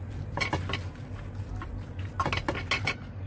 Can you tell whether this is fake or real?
real